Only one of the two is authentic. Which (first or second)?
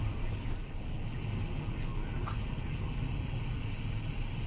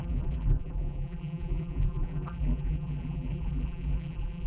first